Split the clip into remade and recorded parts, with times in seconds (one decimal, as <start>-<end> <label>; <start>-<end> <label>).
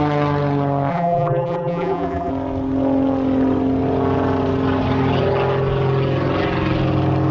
0.0-0.9 recorded; 0.9-2.3 remade; 2.3-7.3 recorded